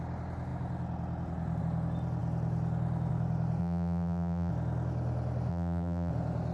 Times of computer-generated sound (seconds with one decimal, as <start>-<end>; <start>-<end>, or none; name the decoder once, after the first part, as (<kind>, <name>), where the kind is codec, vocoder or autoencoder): 3.6-4.5 (vocoder, BigVGAN v2); 5.5-6.1